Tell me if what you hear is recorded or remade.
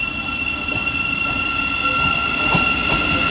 recorded